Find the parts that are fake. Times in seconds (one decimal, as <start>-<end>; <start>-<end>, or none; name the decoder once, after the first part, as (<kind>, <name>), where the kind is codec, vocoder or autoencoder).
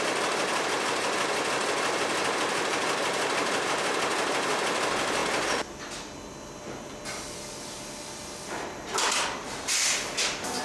none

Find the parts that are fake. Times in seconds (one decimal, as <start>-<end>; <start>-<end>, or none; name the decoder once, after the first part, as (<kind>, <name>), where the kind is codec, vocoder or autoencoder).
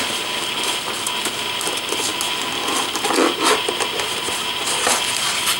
none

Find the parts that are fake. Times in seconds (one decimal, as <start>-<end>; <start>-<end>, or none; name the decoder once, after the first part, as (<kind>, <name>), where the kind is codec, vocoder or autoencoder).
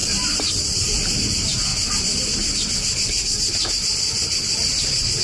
0.0-1.7 (vocoder, BigVGAN v2); 4.8-5.2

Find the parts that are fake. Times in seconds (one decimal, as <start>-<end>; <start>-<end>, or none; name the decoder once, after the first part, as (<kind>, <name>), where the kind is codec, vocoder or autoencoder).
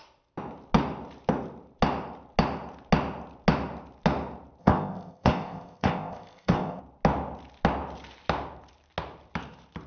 4.6-6.8 (codec, ZipCodec)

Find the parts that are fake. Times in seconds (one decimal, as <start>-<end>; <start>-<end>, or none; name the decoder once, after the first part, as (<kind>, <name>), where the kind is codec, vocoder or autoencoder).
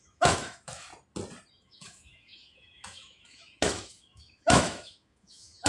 0.0-0.9 (autoencoder, DAC-VAE); 1.5-5.7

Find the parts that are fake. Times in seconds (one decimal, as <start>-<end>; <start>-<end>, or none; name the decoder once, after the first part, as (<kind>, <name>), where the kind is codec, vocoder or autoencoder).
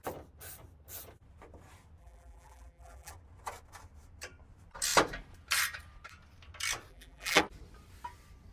2.0-3.1 (vocoder, BigVGAN v2); 6.9-7.4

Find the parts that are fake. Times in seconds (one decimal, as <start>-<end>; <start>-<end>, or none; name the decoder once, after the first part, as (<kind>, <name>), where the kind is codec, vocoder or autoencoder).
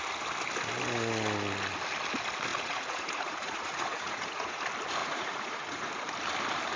2.5-4.6 (vocoder, Vocos); 5.0-5.9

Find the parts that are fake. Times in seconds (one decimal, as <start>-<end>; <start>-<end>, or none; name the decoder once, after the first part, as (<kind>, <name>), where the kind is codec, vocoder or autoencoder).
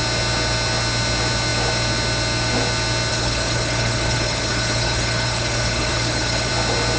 3.1-6.5 (codec, HILCodec)